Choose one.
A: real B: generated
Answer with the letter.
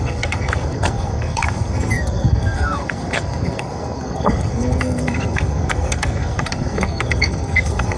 B